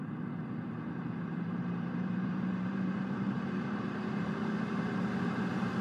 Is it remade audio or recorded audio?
remade